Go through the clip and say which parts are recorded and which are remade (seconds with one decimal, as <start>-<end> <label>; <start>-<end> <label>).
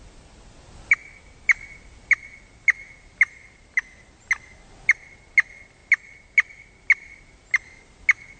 0.0-8.4 recorded